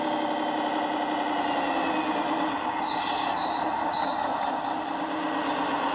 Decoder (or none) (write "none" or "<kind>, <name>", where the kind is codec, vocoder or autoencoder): none